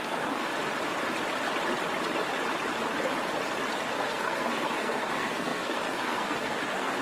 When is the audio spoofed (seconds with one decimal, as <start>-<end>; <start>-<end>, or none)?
0.0-0.5; 3.9-7.0